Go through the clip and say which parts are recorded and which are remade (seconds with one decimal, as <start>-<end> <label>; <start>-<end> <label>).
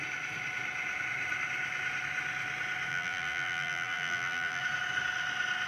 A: 0.0-2.9 recorded; 2.9-4.6 remade; 4.6-5.7 recorded